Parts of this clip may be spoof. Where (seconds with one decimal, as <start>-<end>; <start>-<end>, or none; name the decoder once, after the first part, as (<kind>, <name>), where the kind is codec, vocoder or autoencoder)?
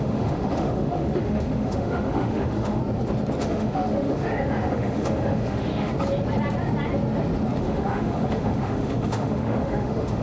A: 0.0-2.8 (autoencoder, DAC-VAE); 3.4-5.9; 7.6-10.2